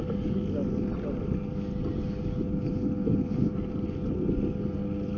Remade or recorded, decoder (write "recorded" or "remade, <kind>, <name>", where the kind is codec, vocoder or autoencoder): recorded